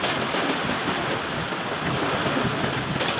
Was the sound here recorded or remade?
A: recorded